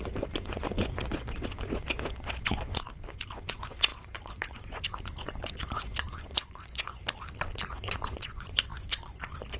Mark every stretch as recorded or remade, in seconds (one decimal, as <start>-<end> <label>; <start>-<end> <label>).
0.0-7.0 remade; 7.0-7.7 recorded; 7.7-9.6 remade